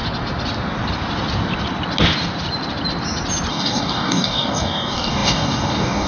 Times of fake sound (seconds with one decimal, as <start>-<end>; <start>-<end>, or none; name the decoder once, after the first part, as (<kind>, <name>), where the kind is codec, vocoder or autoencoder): 3.5-6.1 (codec, DAC)